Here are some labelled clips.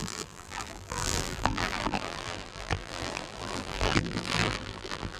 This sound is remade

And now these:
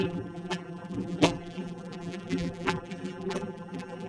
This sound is remade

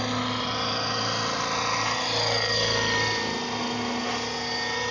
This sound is recorded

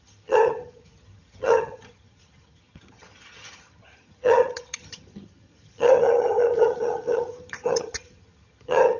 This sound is remade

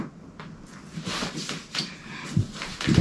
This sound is recorded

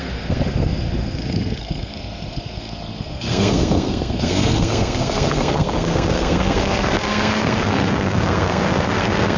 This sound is remade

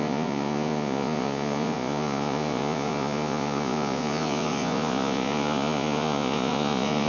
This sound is remade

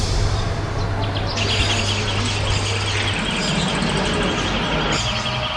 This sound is recorded